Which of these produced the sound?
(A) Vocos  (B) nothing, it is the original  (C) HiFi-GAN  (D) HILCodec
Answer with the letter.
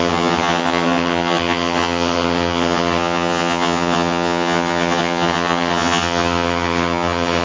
C